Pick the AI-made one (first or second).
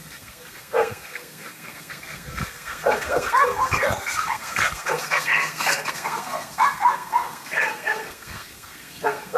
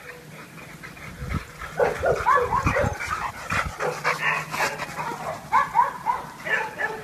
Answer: first